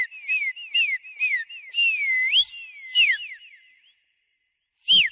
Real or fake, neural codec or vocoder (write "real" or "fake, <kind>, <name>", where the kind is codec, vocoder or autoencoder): real